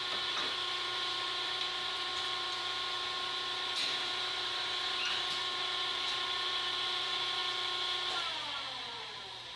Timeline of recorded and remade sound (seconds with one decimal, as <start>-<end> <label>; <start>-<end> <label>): 0.0-7.4 remade; 7.4-8.3 recorded; 8.3-9.6 remade